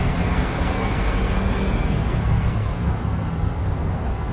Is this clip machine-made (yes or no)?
yes